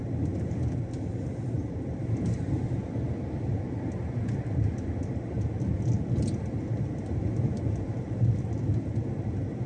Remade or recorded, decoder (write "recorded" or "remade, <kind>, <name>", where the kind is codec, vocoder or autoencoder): recorded